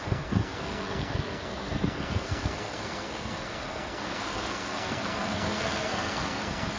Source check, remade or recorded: remade